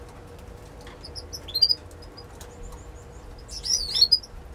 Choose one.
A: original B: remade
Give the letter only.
A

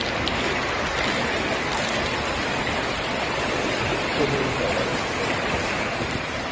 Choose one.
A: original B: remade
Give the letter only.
A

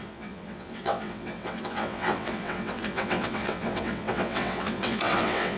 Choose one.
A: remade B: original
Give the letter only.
A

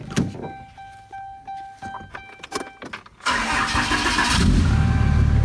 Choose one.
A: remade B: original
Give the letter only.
B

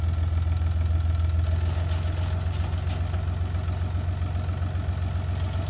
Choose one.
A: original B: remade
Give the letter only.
A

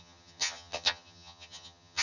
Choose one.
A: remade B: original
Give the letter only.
A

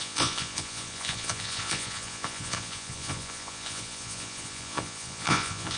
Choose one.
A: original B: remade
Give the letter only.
B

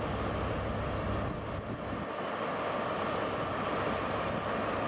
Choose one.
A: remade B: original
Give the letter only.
B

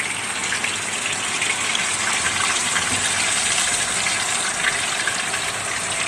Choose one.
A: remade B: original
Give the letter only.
B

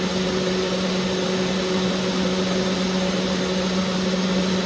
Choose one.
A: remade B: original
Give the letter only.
B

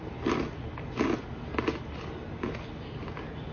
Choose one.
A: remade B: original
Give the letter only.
B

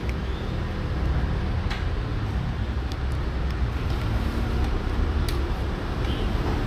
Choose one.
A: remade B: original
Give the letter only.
B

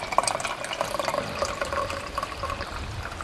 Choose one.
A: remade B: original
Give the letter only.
A